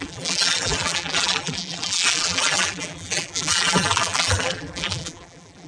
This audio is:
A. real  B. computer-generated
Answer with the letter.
B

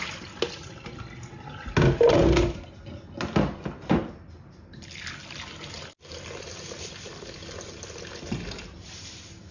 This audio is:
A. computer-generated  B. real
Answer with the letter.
B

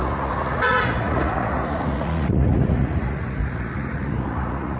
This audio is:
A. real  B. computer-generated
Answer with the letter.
B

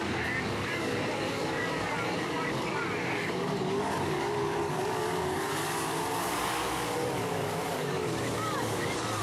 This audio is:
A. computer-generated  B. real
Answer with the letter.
A